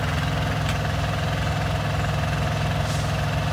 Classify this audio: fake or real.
real